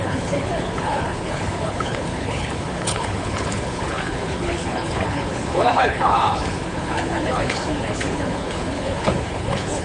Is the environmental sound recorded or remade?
remade